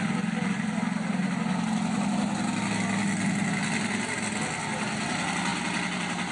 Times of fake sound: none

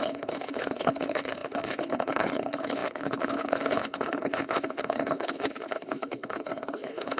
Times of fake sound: 0.0-7.2 (codec, HILCodec)